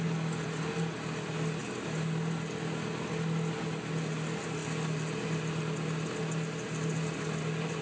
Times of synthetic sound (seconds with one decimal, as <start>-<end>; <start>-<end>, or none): none